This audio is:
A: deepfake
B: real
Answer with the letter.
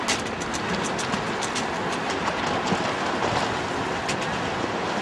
B